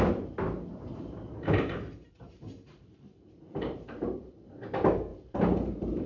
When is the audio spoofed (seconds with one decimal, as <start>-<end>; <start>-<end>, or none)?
0.9-4.6; 5.1-6.1